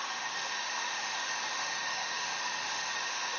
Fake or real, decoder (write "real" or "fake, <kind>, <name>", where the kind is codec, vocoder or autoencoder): fake, autoencoder, DAC-VAE